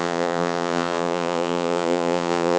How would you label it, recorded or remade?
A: remade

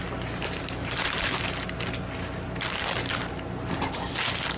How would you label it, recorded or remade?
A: recorded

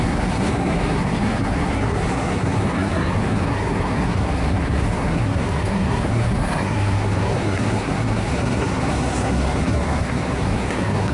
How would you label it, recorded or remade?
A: remade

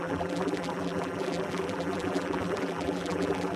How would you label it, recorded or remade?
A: remade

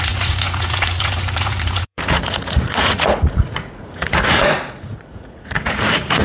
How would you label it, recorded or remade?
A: remade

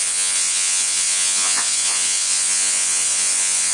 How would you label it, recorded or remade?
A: remade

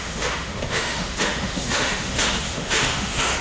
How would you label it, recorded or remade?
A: remade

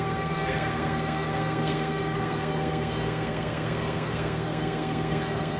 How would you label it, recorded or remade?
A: remade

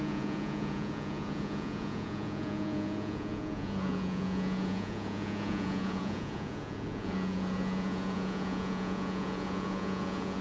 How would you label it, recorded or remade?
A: remade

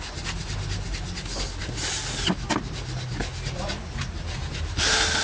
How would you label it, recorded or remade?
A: recorded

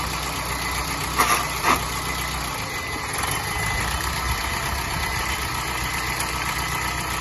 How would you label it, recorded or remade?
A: recorded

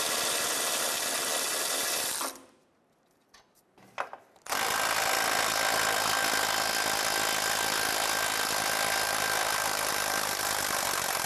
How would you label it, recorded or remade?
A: recorded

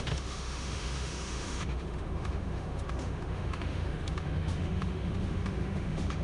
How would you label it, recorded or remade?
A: remade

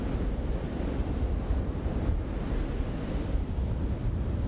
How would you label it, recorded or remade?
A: recorded